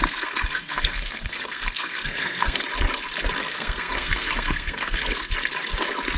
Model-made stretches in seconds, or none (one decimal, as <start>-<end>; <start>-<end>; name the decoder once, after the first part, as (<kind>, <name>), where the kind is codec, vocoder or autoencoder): 0.0-2.6 (codec, SNAC); 3.4-5.3